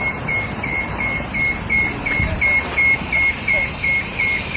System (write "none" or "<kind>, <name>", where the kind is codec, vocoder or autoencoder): none